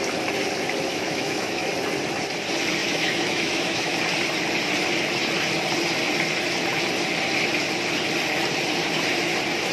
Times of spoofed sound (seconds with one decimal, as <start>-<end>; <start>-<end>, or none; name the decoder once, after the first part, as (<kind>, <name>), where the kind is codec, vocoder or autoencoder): 0.9-1.7 (autoencoder, DAC-VAE); 2.8-4.0

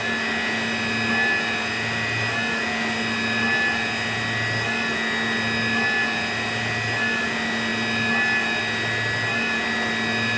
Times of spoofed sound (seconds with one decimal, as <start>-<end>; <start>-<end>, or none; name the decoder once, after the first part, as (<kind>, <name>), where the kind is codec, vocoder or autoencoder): none

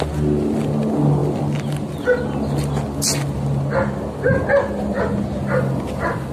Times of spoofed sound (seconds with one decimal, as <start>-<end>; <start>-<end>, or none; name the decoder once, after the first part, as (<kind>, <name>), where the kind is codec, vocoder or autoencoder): none

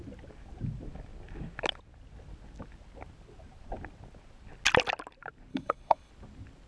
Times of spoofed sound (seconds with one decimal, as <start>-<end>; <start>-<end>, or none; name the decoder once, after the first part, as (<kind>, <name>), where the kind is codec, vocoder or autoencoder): 5.5-6.1 (codec, HILCodec)

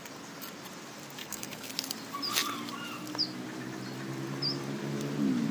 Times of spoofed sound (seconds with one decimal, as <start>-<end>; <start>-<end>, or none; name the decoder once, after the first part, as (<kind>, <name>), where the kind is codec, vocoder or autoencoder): 1.2-1.7 (codec, SNAC)

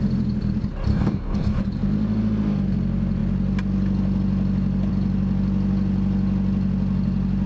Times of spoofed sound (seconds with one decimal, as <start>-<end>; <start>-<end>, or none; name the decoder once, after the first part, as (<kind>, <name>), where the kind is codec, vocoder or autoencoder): 0.9-1.6 (codec, DAC)

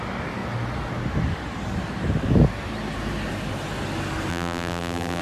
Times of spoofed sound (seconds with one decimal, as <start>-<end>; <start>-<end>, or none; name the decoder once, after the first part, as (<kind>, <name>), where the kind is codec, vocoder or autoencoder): 4.3-5.2 (vocoder, BigVGAN v2)